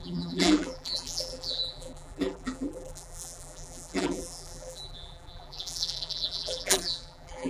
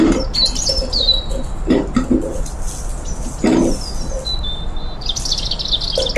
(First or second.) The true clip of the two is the second